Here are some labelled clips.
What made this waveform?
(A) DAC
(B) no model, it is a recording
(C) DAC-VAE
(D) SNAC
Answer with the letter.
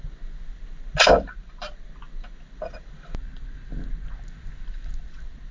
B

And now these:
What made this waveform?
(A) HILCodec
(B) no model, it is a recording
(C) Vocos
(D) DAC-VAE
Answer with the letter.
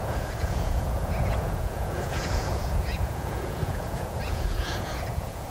C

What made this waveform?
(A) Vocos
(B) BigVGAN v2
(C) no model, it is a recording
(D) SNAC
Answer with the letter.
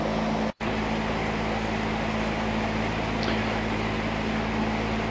C